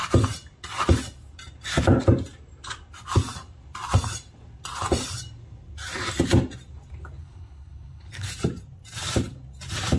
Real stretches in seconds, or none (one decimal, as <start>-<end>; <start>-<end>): 0.0-7.2; 8.3-10.0